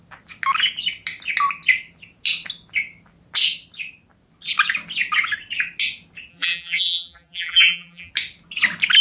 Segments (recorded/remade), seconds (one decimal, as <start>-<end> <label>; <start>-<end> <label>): 0.0-6.3 recorded; 6.3-8.1 remade; 8.1-9.0 recorded

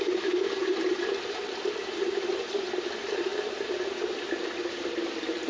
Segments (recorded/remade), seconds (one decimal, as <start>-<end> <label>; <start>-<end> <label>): 0.0-0.6 remade; 0.6-2.3 recorded; 2.3-3.3 remade; 3.3-4.3 recorded; 4.3-5.5 remade

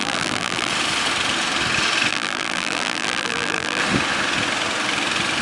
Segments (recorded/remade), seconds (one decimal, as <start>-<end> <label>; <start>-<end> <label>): 0.0-0.7 remade; 0.7-2.1 recorded; 2.1-3.8 remade; 3.8-5.4 recorded

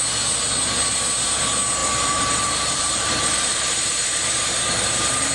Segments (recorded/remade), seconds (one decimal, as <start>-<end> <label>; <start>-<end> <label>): 0.0-1.8 recorded; 1.8-5.3 remade

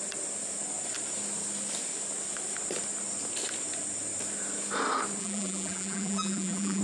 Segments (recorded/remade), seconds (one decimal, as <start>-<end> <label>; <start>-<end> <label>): 0.0-5.2 recorded; 5.2-6.8 remade

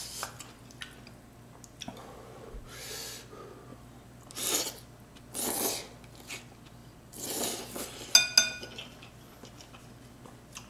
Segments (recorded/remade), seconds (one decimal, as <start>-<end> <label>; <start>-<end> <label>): 0.0-3.7 recorded; 3.7-4.3 remade; 4.3-6.8 recorded; 6.8-7.7 remade; 7.7-10.7 recorded